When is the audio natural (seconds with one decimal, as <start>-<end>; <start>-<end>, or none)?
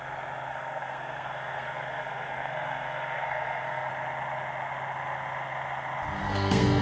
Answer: 0.0-0.5; 3.9-6.2